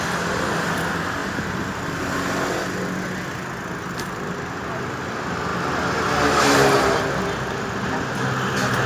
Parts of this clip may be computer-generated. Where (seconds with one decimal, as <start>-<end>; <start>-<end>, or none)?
none